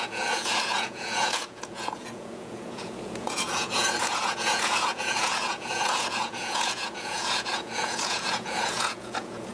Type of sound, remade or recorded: remade